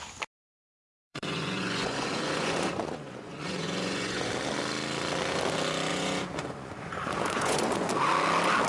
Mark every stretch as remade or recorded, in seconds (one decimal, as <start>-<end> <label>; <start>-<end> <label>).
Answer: 0.0-0.6 recorded; 0.6-4.3 remade; 4.3-5.9 recorded; 5.9-7.9 remade; 7.9-8.7 recorded